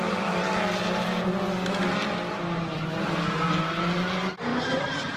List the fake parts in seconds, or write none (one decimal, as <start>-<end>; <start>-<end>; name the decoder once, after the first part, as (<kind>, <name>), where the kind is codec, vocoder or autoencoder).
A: none